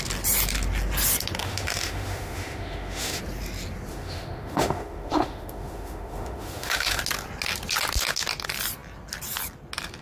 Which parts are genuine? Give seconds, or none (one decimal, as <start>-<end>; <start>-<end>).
0.0-1.4; 3.2-3.9; 7.0-10.0